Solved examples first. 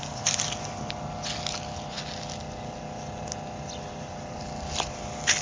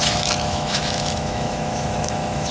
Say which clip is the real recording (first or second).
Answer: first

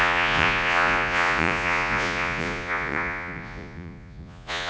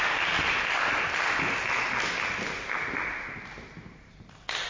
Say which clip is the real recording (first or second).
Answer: second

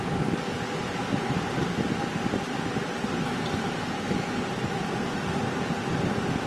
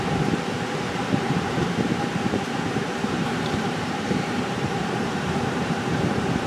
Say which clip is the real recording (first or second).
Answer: first